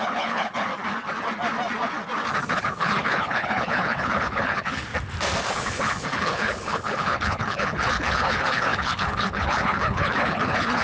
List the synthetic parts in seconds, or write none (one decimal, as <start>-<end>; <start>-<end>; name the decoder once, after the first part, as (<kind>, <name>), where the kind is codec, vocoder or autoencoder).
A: 0.0-0.7 (codec, HILCodec); 2.5-4.9; 5.5-10.8